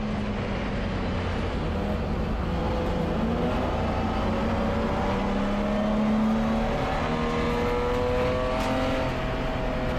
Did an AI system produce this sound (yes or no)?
no